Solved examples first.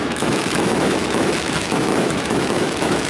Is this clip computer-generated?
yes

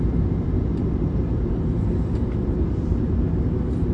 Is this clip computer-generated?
no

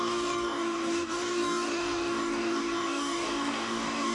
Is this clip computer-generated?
yes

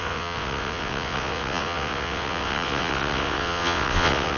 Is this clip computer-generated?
yes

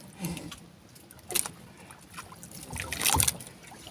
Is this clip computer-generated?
no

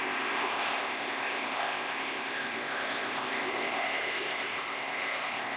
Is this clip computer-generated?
yes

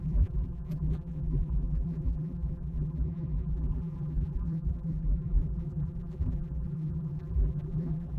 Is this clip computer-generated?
yes